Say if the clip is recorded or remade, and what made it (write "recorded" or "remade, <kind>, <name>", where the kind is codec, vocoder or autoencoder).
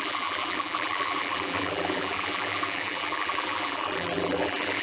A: remade, vocoder, BigVGAN v2